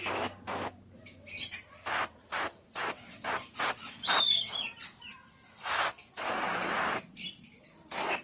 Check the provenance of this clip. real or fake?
real